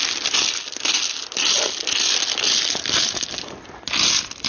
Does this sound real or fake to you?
real